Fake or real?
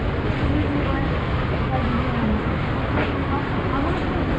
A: real